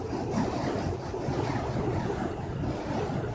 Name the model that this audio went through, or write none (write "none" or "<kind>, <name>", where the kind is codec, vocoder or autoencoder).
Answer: none